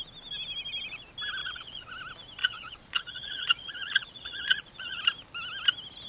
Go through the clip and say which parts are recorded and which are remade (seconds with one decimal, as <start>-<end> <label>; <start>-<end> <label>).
0.0-1.4 recorded; 1.4-1.9 remade; 1.9-2.4 recorded; 2.4-5.0 remade; 5.0-6.1 recorded